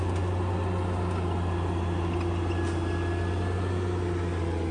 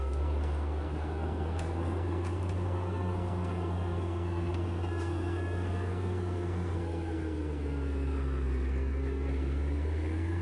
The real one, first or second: first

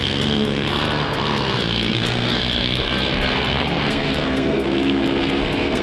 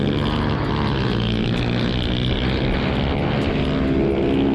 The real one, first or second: second